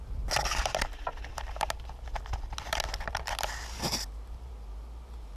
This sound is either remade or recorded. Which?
recorded